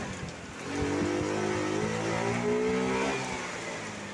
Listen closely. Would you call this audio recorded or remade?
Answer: recorded